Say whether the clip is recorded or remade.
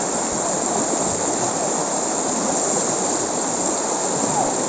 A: recorded